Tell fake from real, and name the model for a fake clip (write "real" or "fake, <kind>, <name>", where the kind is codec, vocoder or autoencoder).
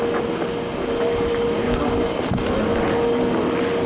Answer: real